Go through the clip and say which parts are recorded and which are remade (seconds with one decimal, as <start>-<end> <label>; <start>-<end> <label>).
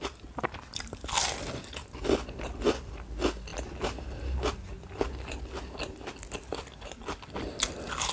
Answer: 0.0-8.1 recorded